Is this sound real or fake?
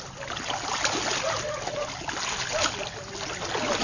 real